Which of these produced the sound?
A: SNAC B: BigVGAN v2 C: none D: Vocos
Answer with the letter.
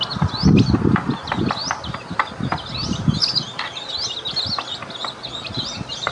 C